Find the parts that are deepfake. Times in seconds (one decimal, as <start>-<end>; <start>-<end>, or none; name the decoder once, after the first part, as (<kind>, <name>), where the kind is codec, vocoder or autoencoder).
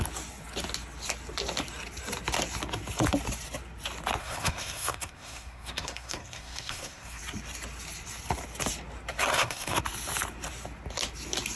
4.2-7.2 (codec, SNAC); 9.3-9.8